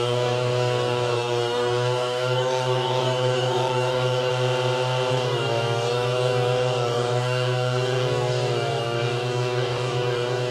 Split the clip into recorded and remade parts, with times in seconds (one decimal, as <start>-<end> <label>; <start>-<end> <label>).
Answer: 0.0-4.3 remade; 4.3-5.1 recorded; 5.1-10.5 remade